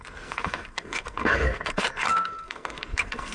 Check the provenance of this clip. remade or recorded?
remade